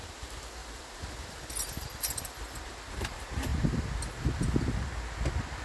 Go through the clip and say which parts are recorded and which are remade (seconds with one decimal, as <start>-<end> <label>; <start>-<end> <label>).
0.0-3.5 remade; 3.5-5.6 recorded

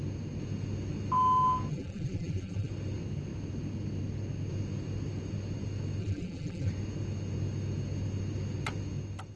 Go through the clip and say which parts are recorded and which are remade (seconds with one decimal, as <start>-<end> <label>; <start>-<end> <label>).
0.0-1.7 recorded; 1.7-2.7 remade; 2.7-6.0 recorded; 6.0-6.7 remade; 6.7-9.4 recorded

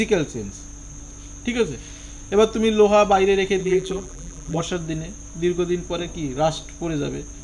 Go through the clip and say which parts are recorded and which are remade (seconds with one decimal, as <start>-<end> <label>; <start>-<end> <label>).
0.0-3.6 recorded; 3.6-4.6 remade; 4.6-7.4 recorded

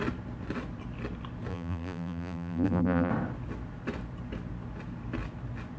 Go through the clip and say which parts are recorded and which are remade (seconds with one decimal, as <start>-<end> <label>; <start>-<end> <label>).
0.0-1.5 recorded; 1.5-3.1 remade; 3.1-5.8 recorded

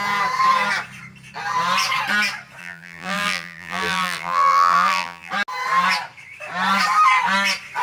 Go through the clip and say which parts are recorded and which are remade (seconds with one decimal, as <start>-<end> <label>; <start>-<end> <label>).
0.0-2.6 recorded; 2.6-5.3 remade; 5.3-7.8 recorded

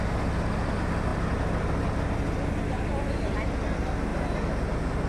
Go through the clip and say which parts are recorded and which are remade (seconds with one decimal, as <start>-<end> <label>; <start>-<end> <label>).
0.0-5.1 recorded

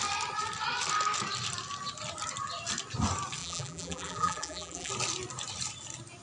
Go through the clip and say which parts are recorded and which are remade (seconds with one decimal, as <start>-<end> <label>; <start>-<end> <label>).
0.0-3.4 recorded; 3.4-4.9 remade; 4.9-6.2 recorded